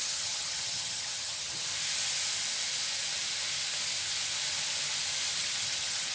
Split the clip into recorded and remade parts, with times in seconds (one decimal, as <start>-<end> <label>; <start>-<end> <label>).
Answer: 0.0-1.7 remade; 1.7-5.4 recorded; 5.4-6.1 remade